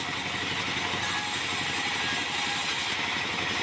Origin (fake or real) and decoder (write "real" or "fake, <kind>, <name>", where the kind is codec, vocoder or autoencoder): real